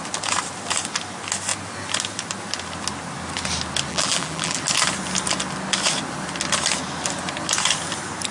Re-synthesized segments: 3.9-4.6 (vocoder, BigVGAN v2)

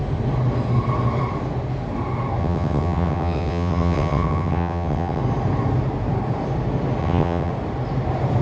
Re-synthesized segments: 2.4-5.2 (vocoder, WaveNeXt); 7.0-7.5

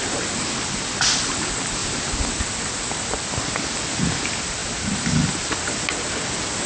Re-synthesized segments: none

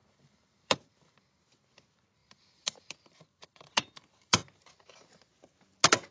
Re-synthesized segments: 0.0-1.2 (vocoder, BigVGAN v2); 2.2-4.7